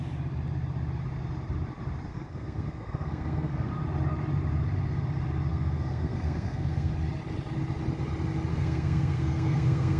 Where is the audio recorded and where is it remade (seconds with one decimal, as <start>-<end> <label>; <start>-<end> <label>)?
0.0-2.1 recorded; 2.1-3.7 remade; 3.7-5.5 recorded; 5.5-6.9 remade; 6.9-8.5 recorded; 8.5-10.0 remade